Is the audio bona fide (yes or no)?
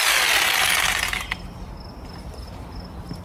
yes